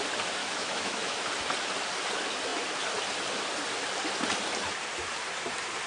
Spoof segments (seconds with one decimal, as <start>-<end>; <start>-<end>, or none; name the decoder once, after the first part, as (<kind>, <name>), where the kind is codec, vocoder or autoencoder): 0.4-1.3 (autoencoder, DAC-VAE)